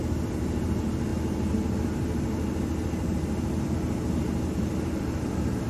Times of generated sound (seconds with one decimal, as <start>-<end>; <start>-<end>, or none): 0.0-1.1; 4.5-5.7